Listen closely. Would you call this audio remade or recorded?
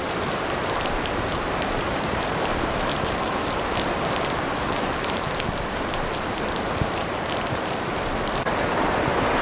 remade